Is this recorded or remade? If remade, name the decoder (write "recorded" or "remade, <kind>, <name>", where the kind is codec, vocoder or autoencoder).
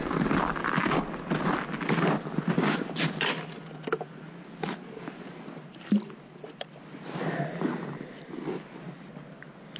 recorded